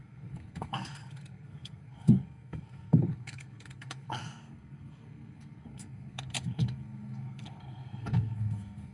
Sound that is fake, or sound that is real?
fake